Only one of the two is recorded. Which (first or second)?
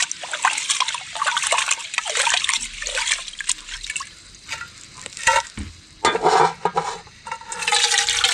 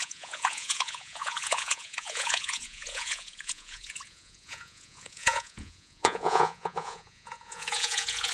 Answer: first